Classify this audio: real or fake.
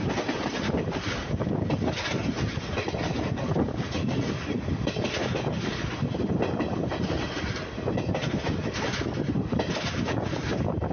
real